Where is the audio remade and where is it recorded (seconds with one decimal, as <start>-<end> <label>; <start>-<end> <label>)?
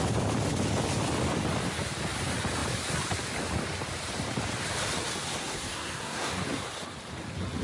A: 0.0-5.4 recorded; 5.4-6.3 remade; 6.3-7.6 recorded